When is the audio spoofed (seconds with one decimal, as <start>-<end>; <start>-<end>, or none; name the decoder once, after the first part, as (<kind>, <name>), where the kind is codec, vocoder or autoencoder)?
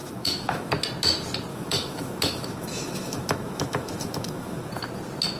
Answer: 0.0-0.7 (autoencoder, DAC-VAE); 1.5-4.7